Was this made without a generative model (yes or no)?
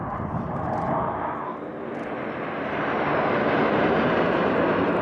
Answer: yes